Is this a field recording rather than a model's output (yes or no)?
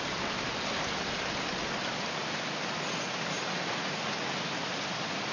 yes